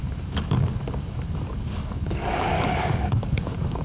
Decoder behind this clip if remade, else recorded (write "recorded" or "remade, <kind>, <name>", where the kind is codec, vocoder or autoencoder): remade, codec, DAC